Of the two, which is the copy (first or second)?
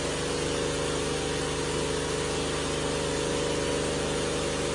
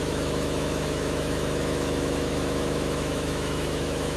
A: second